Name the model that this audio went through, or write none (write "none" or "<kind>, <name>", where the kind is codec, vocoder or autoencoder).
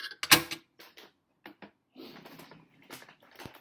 none